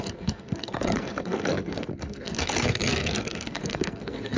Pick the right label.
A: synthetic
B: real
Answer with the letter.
A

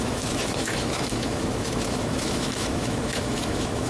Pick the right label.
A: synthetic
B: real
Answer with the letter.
A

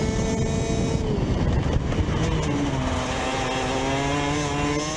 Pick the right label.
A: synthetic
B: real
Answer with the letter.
B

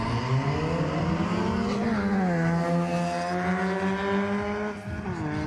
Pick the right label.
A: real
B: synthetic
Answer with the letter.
A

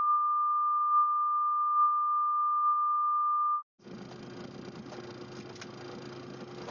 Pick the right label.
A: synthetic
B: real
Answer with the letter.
B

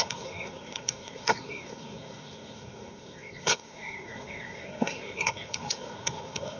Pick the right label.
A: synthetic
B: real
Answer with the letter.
A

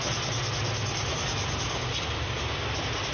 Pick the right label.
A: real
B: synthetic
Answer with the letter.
A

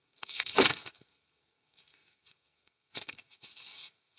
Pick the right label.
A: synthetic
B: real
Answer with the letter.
A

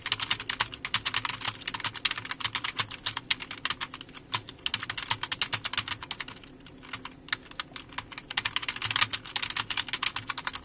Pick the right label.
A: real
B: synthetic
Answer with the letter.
A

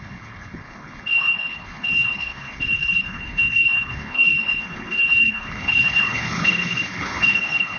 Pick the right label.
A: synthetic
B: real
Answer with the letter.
A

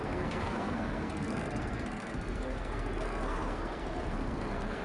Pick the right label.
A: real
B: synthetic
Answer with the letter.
B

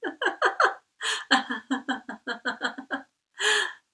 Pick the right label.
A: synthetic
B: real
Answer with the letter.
B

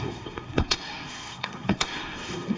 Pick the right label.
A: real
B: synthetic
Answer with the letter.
B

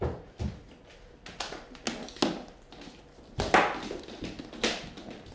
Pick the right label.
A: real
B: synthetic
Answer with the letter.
A